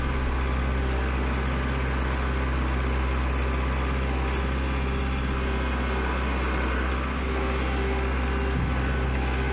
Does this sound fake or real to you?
real